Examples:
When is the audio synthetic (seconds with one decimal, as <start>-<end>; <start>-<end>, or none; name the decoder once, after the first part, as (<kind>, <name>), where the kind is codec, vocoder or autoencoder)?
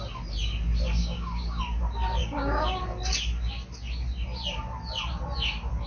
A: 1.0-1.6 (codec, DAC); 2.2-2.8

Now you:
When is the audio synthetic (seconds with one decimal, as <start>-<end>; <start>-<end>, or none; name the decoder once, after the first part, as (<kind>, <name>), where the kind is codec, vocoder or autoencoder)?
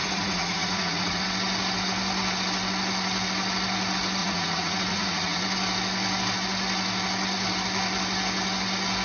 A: 0.0-1.2 (vocoder, Vocos); 4.2-5.4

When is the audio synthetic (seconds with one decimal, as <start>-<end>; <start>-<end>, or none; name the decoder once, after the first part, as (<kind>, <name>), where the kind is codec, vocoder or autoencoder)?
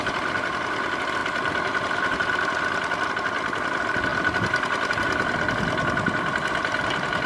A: 0.0-7.3 (vocoder, BigVGAN v2)